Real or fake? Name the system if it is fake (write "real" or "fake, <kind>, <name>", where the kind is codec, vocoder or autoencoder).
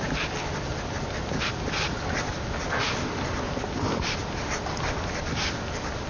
real